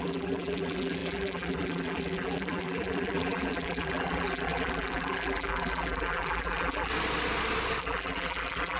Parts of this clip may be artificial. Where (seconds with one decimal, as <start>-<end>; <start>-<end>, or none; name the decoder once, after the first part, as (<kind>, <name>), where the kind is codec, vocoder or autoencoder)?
0.0-6.9 (vocoder, BigVGAN v2); 7.8-8.8